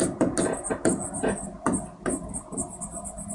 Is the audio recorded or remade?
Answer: recorded